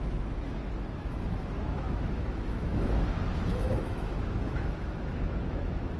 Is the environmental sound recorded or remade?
remade